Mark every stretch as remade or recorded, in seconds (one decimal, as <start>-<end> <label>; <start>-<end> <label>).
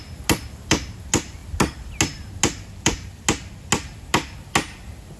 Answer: 0.0-5.2 recorded